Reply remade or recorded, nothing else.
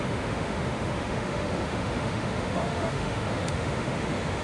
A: remade